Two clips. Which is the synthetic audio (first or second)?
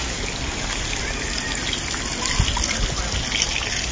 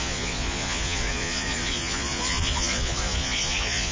second